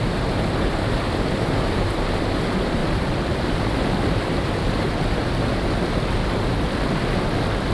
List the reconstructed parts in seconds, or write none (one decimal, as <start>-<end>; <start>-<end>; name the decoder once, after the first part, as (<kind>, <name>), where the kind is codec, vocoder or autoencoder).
2.8-4.5 (vocoder, BigVGAN v2)

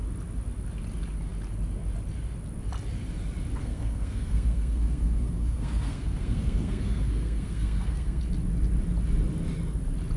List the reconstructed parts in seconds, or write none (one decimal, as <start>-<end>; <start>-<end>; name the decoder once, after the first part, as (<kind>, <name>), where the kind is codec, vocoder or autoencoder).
3.6-8.2 (codec, SNAC)

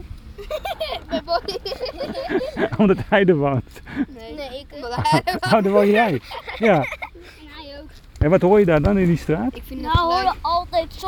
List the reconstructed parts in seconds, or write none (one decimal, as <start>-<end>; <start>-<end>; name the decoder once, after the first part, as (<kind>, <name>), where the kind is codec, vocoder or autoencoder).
none

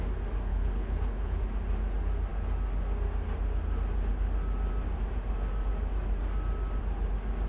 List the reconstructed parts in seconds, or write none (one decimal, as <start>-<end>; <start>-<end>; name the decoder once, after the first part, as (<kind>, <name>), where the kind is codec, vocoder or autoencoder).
0.5-1.4 (codec, HILCodec)